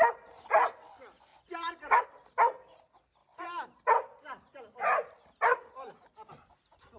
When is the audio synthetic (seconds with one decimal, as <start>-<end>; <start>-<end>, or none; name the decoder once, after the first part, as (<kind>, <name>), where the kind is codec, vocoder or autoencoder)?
1.3-2.0 (vocoder, BigVGAN v2)